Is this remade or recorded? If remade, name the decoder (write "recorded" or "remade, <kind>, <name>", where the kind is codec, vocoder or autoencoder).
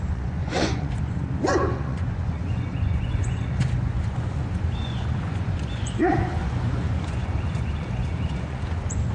remade, vocoder, Vocos